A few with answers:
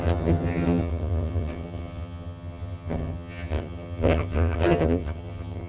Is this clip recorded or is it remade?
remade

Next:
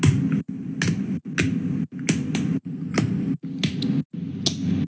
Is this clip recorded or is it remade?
recorded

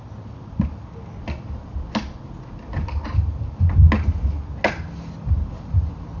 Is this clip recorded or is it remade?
recorded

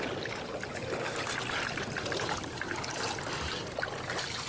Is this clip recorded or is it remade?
recorded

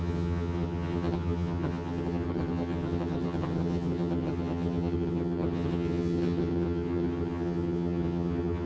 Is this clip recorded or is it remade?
remade